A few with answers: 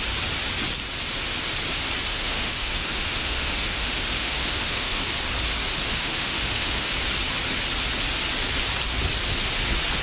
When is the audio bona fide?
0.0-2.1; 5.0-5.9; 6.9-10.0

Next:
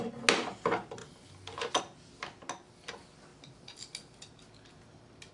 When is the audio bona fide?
0.0-5.3

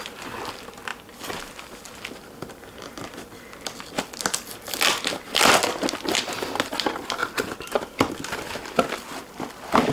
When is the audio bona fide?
0.0-9.9